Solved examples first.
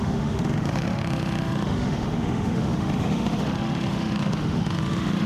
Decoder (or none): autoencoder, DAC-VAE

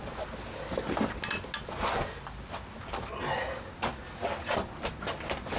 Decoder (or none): none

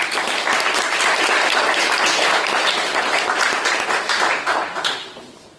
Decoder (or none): none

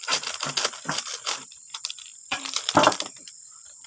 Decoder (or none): vocoder, BigVGAN v2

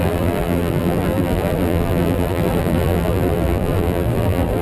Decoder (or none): vocoder, BigVGAN v2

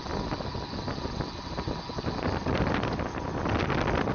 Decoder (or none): none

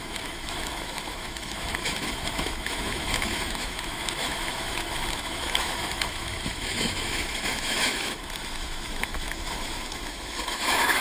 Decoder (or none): autoencoder, DAC-VAE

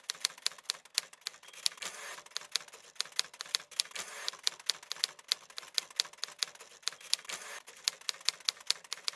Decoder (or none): none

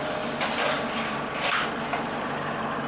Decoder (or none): none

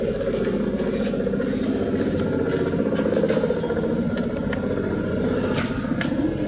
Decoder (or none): none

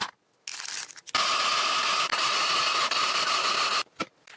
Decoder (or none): none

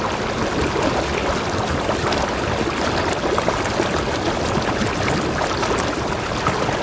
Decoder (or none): none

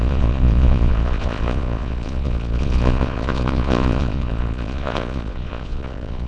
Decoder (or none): vocoder, Vocos